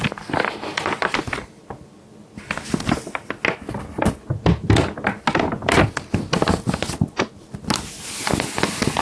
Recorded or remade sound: recorded